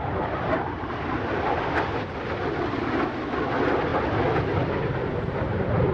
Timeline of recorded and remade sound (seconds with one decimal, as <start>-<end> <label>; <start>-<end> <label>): 0.0-5.9 recorded